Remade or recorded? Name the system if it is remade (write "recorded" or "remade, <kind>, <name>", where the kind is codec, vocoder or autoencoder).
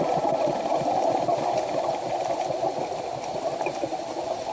recorded